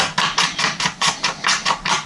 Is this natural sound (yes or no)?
yes